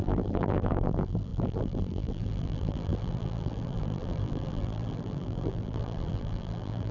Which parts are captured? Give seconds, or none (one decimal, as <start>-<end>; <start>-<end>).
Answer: none